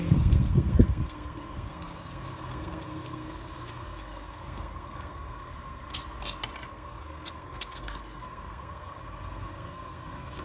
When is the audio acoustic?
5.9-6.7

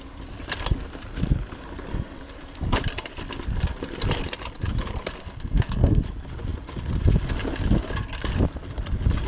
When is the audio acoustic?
0.0-5.2; 6.0-9.3

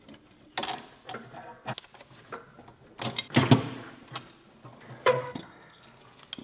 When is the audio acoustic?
0.0-5.1; 6.0-6.4

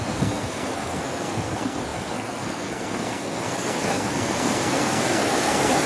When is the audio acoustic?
none